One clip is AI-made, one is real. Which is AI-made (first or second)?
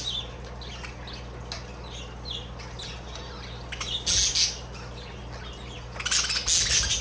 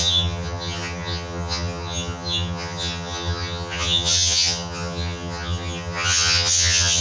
second